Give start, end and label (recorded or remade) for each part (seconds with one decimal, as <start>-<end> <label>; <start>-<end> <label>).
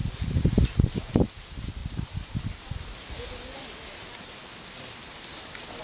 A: 0.0-1.1 remade; 1.1-1.8 recorded; 1.8-3.1 remade; 3.1-5.8 recorded